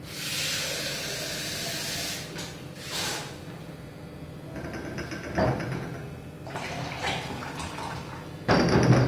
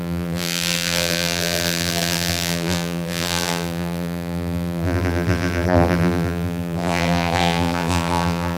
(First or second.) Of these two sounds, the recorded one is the first